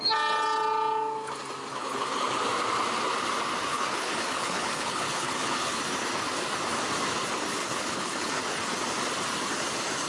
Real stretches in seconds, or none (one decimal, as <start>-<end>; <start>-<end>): 0.0-1.7; 2.3-3.7; 5.8-7.6; 8.4-10.1